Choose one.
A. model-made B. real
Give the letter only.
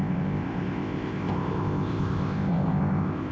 A